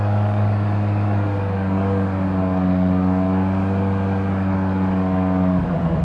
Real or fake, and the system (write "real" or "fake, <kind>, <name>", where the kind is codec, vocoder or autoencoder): fake, codec, DAC